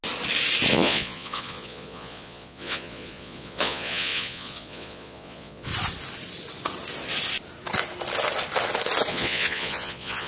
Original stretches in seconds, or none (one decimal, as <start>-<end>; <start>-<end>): 0.0-0.7; 5.7-9.1